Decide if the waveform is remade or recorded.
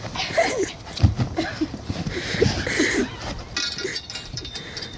recorded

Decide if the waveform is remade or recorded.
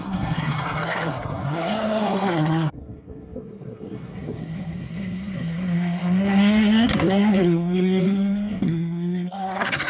remade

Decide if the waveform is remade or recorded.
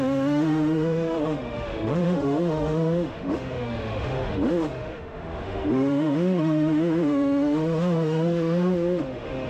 remade